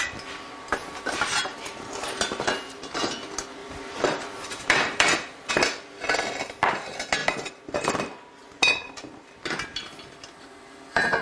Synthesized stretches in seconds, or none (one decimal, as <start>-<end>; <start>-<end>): 0.8-2.8; 3.6-5.5; 7.2-7.9